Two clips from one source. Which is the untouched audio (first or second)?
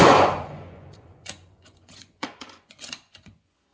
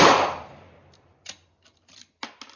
second